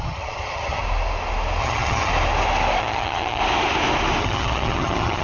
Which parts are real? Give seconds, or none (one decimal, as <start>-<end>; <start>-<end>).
0.8-1.6; 2.1-2.8; 3.4-4.2